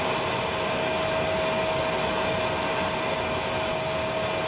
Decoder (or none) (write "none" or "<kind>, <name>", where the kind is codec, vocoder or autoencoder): none